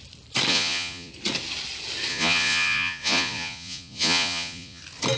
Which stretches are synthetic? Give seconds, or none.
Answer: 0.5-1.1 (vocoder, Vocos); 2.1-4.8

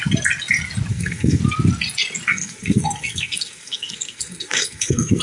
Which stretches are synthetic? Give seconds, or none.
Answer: 0.9-1.4 (codec, SNAC); 2.3-5.2

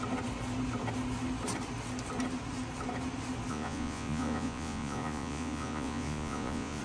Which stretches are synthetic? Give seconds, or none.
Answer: 3.5-6.8 (vocoder, Vocos)

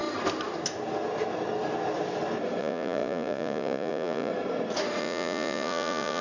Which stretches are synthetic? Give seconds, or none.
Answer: 2.6-4.3 (vocoder, Vocos); 5.0-6.2

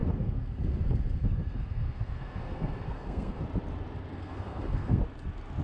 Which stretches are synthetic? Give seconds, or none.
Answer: 0.0-3.4 (codec, SNAC); 4.1-5.0